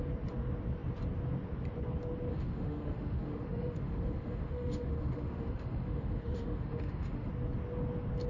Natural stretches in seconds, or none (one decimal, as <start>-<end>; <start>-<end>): 0.0-2.3; 7.3-8.3